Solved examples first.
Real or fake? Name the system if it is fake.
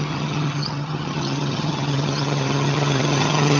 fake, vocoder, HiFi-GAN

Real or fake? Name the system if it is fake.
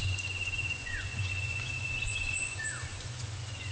fake, vocoder, Vocos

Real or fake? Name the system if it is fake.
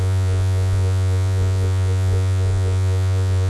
fake, vocoder, Vocos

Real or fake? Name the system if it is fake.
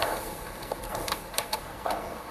fake, codec, SNAC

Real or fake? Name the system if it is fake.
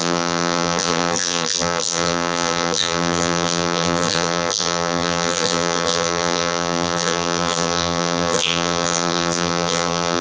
fake, vocoder, BigVGAN v2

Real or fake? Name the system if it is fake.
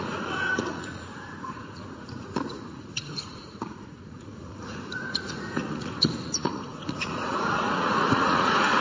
fake, vocoder, Vocos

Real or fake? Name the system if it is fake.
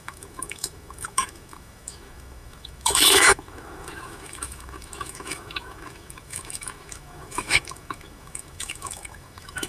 fake, autoencoder, DAC-VAE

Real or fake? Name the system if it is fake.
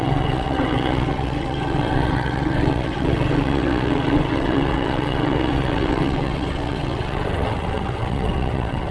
fake, vocoder, WaveNeXt